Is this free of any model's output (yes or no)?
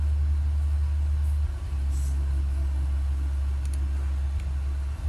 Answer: yes